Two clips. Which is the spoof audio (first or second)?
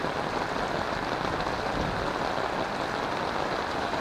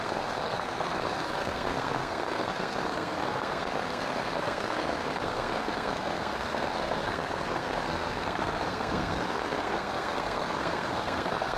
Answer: second